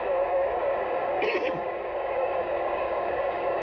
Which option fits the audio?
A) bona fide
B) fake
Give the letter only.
B